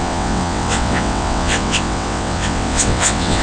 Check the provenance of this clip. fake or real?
fake